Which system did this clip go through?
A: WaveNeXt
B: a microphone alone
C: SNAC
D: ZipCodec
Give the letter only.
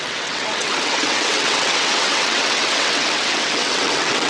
A